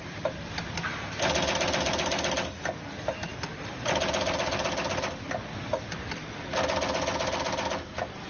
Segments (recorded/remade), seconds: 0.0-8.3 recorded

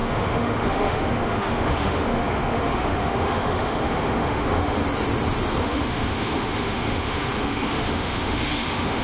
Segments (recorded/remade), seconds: 0.0-4.8 remade; 4.8-5.6 recorded; 5.6-9.0 remade

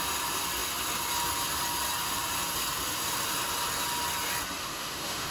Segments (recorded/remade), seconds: 0.0-4.6 recorded; 4.6-5.3 remade

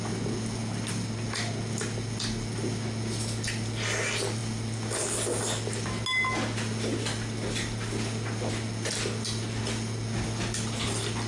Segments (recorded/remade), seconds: 0.0-11.3 recorded

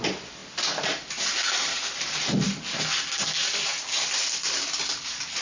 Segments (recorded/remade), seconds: 0.0-5.4 recorded

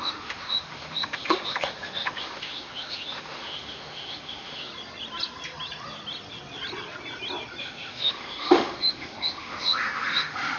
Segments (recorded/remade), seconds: 0.0-4.7 remade; 4.7-7.6 recorded; 7.6-10.6 remade

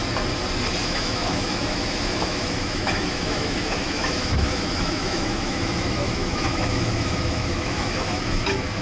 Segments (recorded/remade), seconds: 0.0-0.8 recorded; 0.8-8.8 remade

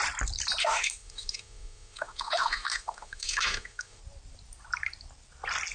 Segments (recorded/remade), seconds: 0.0-0.6 recorded; 0.6-4.0 remade; 4.0-5.7 recorded